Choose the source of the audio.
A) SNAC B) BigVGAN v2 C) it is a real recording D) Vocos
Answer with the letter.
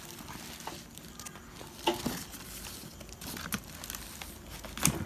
C